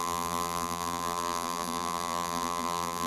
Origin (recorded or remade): remade